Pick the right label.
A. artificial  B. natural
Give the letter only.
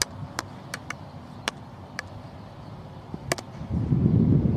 B